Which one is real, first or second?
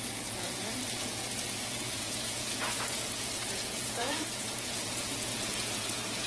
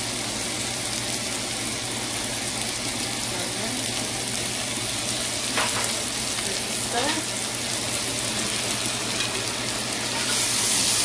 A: second